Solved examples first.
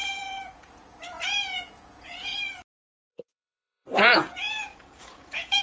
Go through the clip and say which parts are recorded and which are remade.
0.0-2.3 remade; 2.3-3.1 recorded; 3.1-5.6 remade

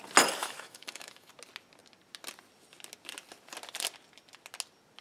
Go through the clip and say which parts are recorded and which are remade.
0.0-0.4 recorded; 0.4-1.3 remade; 1.3-5.0 recorded